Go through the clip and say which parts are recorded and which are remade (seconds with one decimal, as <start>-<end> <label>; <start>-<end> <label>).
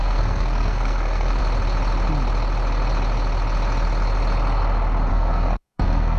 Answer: 0.0-1.4 remade; 1.4-5.1 recorded; 5.1-6.2 remade